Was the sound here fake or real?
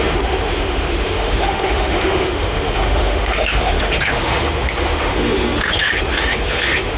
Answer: fake